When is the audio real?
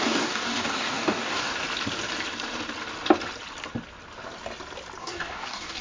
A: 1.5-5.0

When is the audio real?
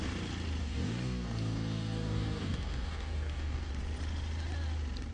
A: 0.0-0.6; 3.7-5.1